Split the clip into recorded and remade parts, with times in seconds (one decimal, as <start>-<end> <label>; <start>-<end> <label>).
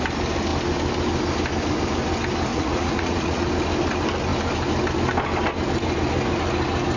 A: 0.0-2.5 recorded; 2.5-3.5 remade; 3.5-7.0 recorded